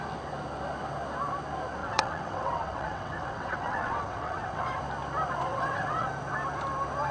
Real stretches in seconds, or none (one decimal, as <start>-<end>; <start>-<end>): 0.0-1.8; 4.8-5.5; 6.1-7.1